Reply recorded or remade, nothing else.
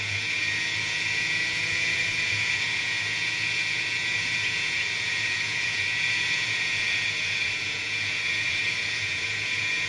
remade